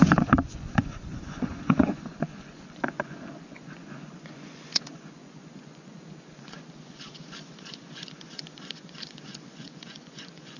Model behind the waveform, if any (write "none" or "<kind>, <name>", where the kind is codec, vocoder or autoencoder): vocoder, Vocos